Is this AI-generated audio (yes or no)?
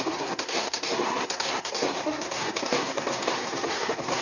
yes